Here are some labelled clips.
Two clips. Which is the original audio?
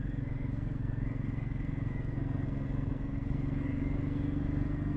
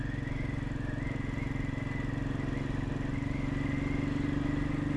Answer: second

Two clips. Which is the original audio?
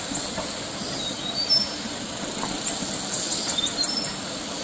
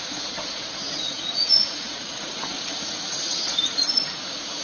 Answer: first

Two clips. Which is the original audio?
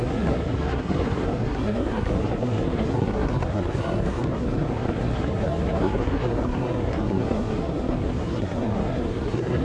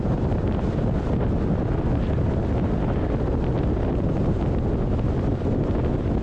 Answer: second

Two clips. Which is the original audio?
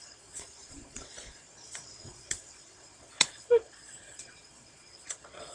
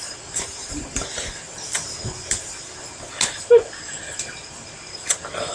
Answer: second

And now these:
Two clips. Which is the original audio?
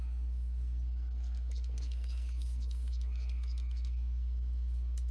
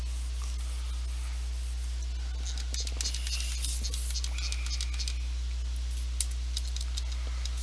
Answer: second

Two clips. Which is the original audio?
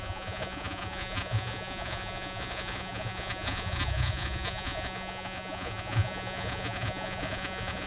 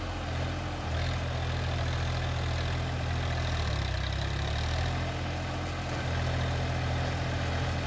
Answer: second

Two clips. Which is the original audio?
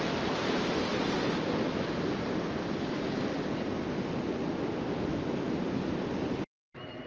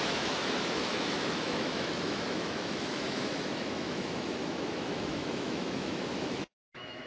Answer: first